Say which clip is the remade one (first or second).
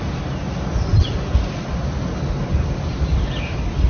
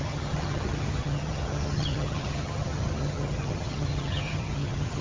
second